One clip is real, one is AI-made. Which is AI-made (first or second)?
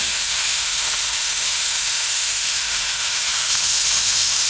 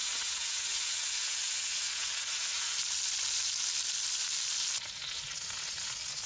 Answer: first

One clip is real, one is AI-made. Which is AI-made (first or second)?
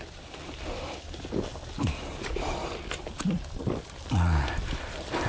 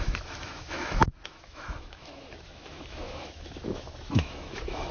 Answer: second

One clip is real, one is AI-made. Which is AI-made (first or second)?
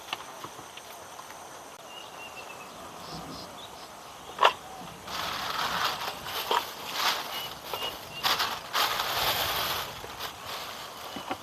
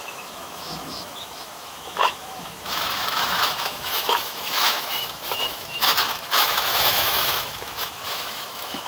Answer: second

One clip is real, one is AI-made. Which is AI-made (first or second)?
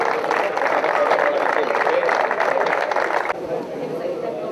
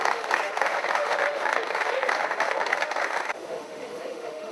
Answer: second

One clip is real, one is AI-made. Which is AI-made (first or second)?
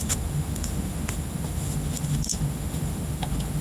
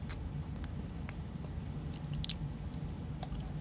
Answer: first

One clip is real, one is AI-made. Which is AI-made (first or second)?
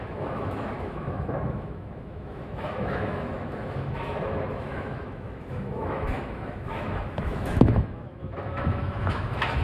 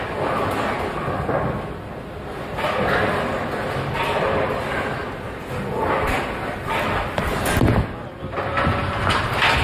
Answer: first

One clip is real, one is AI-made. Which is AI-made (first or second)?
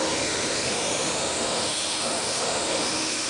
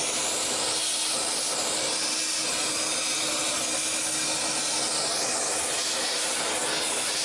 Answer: first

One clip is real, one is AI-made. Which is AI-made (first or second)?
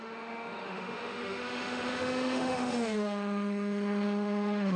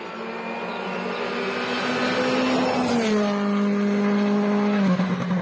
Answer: first